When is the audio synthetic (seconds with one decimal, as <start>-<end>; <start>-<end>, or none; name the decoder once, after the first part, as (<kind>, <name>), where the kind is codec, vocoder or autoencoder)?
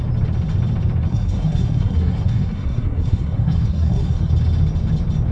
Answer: 1.1-4.3 (codec, SNAC)